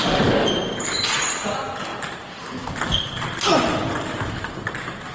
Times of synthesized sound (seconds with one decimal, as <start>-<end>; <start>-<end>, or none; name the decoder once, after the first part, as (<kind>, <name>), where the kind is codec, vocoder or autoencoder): none